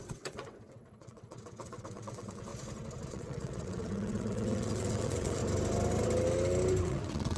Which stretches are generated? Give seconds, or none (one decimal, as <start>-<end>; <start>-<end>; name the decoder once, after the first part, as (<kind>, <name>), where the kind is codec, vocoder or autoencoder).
0.0-2.5 (vocoder, WaveNeXt); 3.1-5.4; 6.8-7.4